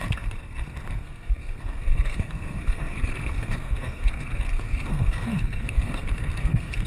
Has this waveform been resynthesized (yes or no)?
yes